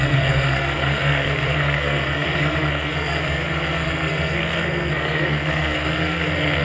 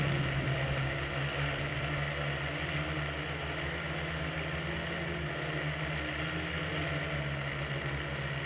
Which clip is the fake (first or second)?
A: first